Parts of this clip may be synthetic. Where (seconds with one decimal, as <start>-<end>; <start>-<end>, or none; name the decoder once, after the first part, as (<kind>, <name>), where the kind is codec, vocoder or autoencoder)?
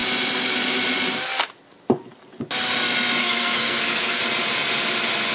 3.2-4.2 (codec, SNAC)